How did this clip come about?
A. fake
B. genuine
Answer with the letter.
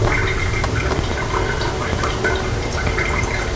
B